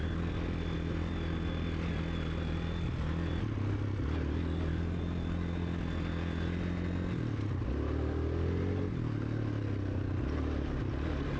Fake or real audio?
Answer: real